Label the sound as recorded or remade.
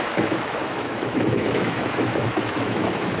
remade